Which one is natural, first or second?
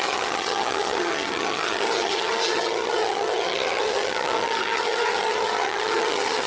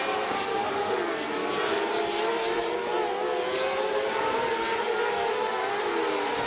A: second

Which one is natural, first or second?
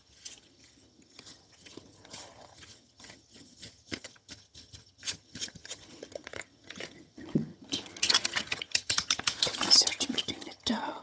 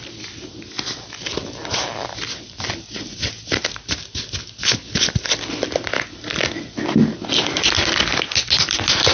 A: second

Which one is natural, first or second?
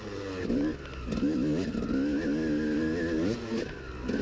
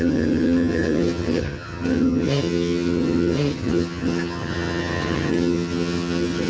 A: first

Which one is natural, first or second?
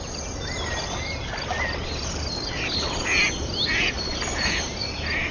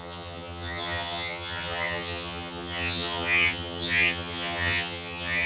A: first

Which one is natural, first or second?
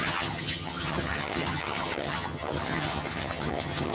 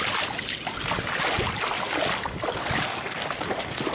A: second